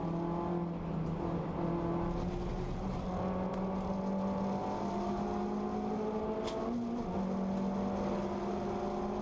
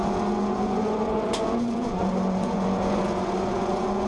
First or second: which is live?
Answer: first